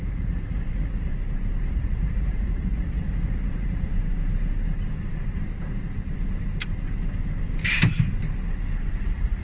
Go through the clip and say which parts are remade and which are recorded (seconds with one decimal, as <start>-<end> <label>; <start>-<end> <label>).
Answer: 0.0-1.1 remade; 1.1-1.6 recorded; 1.6-3.9 remade; 3.9-8.9 recorded; 8.9-9.4 remade